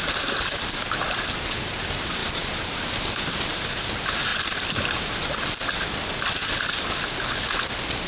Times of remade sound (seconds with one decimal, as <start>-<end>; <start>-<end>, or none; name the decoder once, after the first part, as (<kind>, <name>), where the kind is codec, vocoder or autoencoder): none